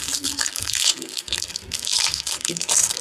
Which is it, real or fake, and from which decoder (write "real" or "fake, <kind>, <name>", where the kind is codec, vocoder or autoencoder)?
fake, codec, SNAC